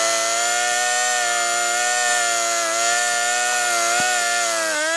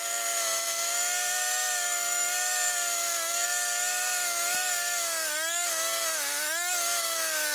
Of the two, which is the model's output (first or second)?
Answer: second